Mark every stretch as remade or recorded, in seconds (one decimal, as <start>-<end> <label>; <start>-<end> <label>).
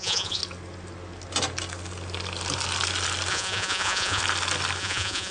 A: 0.0-0.4 remade; 0.4-3.3 recorded; 3.3-4.2 remade; 4.2-4.8 recorded; 4.8-5.3 remade